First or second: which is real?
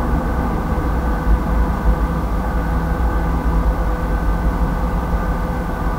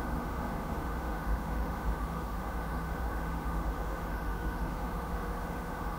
first